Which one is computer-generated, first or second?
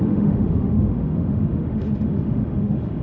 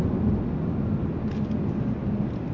first